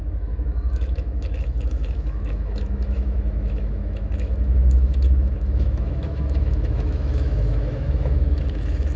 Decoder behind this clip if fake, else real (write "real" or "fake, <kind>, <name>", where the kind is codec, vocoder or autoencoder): fake, autoencoder, DAC-VAE